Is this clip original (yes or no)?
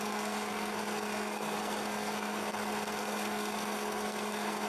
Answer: no